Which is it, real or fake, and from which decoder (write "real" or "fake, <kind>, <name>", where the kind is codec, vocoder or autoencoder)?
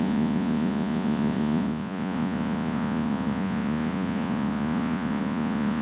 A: fake, vocoder, Vocos